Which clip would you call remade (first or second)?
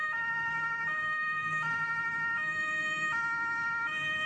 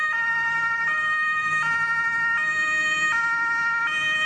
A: first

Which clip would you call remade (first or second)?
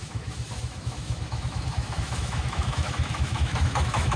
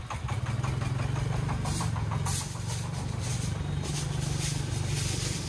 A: first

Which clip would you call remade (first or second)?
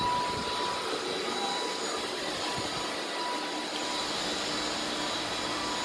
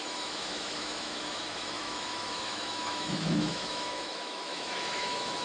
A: second